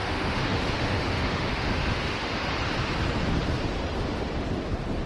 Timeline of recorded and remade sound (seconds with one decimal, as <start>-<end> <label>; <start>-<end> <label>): 0.0-2.4 remade; 2.4-5.1 recorded